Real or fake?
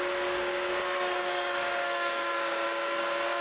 fake